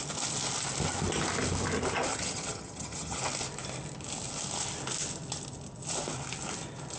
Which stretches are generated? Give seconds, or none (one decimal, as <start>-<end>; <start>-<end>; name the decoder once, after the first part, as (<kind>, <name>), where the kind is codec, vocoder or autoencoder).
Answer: 2.1-3.2 (vocoder, HiFi-GAN)